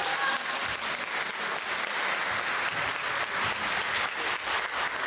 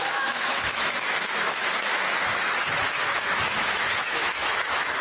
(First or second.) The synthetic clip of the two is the second